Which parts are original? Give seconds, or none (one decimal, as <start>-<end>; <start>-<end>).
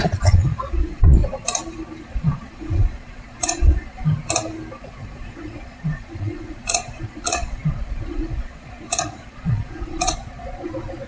1.2-2.0; 4.0-4.8